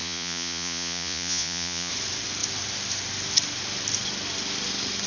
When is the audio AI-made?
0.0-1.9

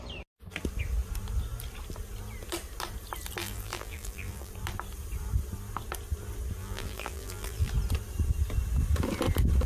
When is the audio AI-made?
3.4-4.5; 6.6-7.7